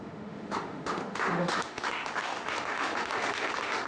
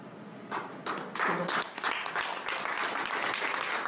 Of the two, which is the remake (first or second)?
first